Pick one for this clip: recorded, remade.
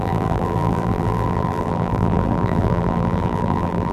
remade